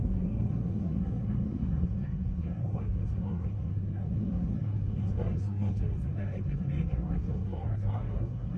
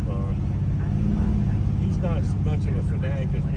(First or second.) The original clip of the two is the second